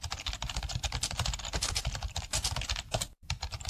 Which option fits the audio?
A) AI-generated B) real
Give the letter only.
A